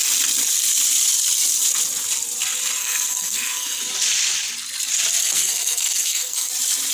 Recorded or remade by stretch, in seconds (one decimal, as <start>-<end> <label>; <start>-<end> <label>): 0.0-2.8 recorded; 2.8-3.8 remade; 3.8-5.2 recorded; 5.2-6.5 remade; 6.5-6.9 recorded